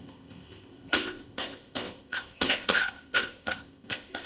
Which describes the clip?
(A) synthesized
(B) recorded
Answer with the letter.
A